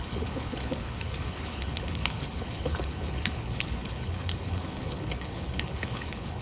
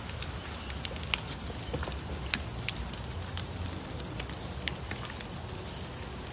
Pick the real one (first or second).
second